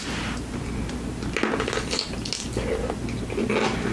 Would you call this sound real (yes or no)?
yes